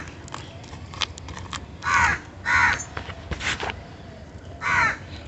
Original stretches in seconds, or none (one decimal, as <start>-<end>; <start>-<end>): 0.0-0.6; 2.1-5.3